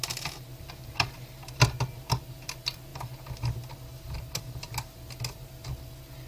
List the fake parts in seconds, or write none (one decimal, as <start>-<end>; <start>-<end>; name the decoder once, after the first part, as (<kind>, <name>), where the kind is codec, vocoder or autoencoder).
none